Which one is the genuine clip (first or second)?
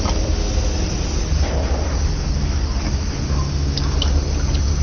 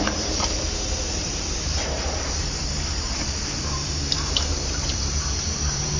first